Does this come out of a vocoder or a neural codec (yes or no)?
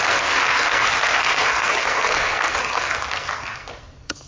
yes